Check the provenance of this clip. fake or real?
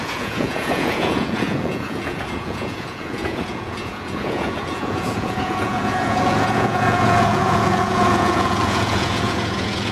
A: fake